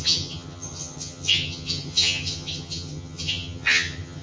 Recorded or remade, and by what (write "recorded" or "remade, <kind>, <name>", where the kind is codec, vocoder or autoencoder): remade, vocoder, HiFi-GAN